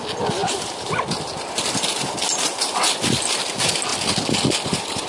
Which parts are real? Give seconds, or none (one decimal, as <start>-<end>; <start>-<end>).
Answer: 0.0-0.4; 3.5-5.1